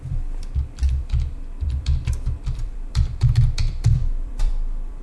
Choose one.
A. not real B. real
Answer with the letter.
A